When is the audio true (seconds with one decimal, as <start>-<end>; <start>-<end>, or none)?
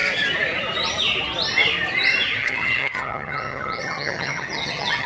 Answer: 0.0-2.4